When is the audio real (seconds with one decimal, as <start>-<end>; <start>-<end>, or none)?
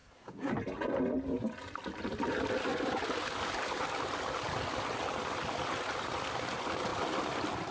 0.5-7.7